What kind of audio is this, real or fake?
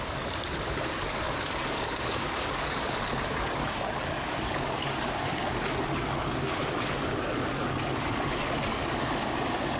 fake